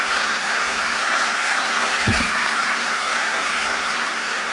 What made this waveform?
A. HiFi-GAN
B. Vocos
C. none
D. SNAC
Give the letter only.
D